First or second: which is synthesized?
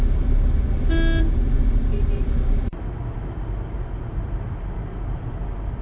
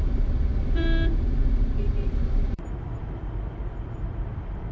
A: second